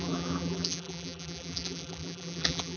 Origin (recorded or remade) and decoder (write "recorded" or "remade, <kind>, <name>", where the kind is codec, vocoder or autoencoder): remade, vocoder, BigVGAN v2